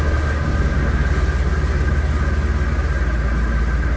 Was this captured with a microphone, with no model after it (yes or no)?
yes